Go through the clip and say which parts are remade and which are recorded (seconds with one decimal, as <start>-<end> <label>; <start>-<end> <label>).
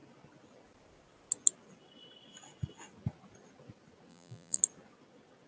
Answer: 0.0-4.1 recorded; 4.1-4.6 remade; 4.6-5.5 recorded